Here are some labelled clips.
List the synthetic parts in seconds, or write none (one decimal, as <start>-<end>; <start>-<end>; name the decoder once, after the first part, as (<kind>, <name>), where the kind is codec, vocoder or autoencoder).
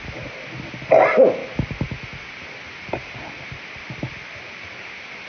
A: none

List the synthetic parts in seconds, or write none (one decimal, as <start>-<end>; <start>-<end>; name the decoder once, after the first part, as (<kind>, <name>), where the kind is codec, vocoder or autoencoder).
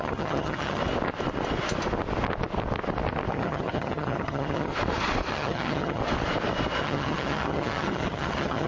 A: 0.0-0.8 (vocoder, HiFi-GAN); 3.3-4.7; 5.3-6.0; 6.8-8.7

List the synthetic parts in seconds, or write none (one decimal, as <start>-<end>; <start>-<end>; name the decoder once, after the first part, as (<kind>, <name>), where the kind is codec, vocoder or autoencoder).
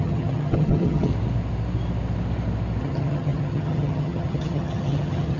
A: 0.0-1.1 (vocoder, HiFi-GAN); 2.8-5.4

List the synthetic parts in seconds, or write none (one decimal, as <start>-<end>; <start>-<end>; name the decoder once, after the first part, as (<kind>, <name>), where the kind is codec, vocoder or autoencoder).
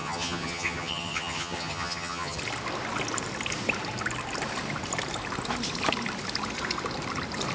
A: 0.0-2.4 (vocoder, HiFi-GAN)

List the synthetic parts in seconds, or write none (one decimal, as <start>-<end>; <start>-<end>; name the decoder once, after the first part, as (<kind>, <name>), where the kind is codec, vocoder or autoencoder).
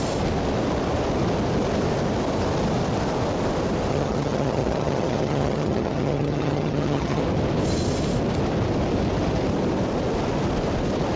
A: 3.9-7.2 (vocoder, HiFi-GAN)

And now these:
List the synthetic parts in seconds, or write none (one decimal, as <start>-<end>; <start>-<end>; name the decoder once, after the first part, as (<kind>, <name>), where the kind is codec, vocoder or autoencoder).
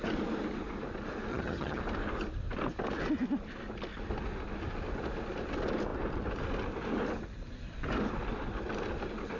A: 1.3-1.8 (vocoder, HiFi-GAN)